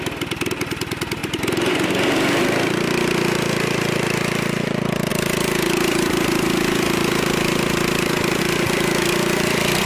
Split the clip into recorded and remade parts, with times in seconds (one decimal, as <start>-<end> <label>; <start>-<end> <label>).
0.0-1.2 recorded; 1.2-1.9 remade; 1.9-5.1 recorded; 5.1-8.4 remade; 8.4-9.9 recorded